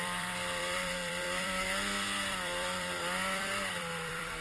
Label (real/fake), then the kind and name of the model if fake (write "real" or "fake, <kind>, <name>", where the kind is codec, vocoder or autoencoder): fake, vocoder, BigVGAN v2